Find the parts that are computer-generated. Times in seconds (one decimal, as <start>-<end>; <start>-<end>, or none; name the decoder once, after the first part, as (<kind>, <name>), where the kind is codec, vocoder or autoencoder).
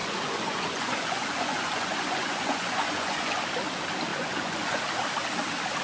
0.0-3.4 (vocoder, Vocos); 4.1-4.8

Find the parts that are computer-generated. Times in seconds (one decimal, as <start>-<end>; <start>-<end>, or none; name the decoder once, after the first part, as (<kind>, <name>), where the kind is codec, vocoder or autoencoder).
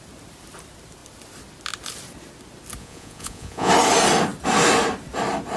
2.8-3.7 (vocoder, Vocos)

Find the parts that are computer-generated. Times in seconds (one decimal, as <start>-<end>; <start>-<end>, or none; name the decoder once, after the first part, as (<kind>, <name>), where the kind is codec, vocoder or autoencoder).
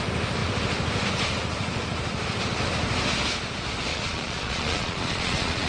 3.9-5.7 (vocoder, Vocos)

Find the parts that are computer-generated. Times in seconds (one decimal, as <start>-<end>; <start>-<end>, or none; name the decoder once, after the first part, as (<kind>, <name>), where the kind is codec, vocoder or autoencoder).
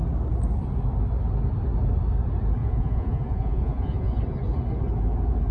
2.6-4.2 (vocoder, Vocos)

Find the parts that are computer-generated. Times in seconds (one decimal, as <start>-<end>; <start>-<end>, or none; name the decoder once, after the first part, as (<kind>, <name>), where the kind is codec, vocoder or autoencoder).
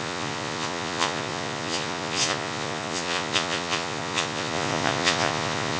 0.0-5.8 (vocoder, Vocos)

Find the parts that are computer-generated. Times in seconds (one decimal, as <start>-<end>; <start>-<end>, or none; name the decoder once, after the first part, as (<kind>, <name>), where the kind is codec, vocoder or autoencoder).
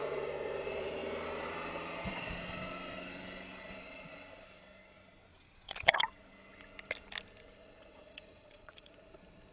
5.3-6.0 (vocoder, Vocos); 7.9-8.9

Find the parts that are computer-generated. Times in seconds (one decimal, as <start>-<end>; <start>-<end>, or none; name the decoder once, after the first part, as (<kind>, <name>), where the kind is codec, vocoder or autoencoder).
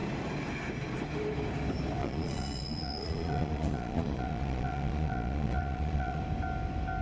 2.0-6.2 (vocoder, Vocos)